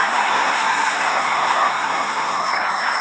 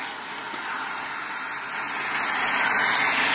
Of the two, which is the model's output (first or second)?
first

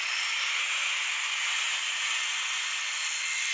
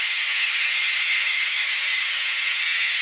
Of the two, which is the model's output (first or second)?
second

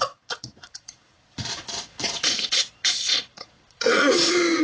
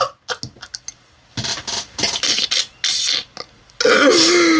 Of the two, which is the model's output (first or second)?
first